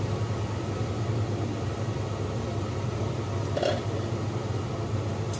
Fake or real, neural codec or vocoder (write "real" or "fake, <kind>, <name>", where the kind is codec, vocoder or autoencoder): real